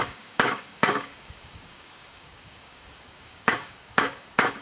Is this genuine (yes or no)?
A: no